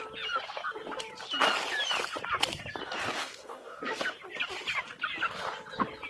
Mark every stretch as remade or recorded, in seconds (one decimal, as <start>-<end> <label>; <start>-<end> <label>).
0.0-3.2 recorded; 3.2-3.8 remade; 3.8-6.1 recorded